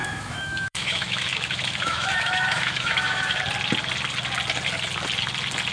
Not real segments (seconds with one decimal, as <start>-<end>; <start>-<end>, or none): 0.0-3.4